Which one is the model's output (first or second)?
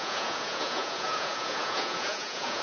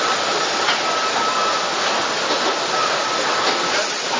first